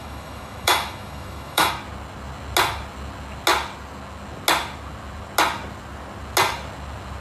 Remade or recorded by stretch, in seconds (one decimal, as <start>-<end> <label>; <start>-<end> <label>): 0.0-1.7 remade; 1.7-7.2 recorded